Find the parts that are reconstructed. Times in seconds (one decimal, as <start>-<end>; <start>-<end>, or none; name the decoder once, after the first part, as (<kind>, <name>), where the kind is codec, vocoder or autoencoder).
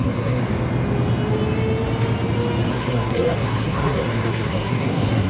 0.0-0.4 (codec, SNAC); 2.7-5.3